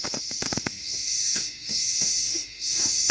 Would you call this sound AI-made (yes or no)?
yes